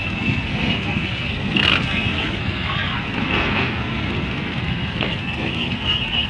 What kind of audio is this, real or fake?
fake